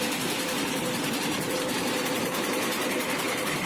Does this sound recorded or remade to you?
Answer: remade